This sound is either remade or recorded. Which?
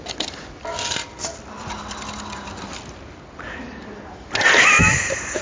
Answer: recorded